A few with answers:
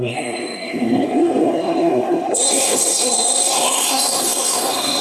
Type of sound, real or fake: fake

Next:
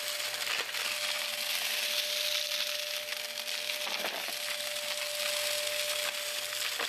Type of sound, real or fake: real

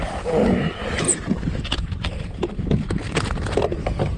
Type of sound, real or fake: real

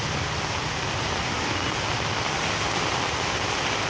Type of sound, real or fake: real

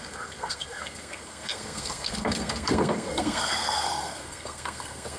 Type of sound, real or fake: fake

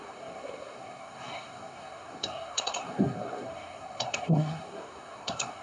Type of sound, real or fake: fake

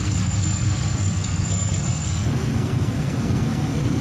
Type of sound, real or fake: fake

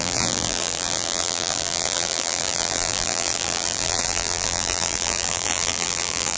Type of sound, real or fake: fake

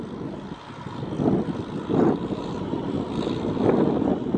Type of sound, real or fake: real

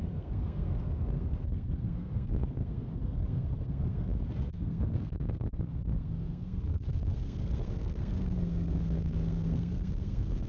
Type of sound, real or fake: fake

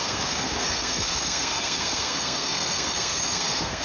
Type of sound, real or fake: fake